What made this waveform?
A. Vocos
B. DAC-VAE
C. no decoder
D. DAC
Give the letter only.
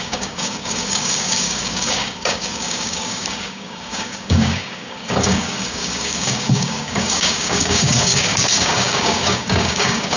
D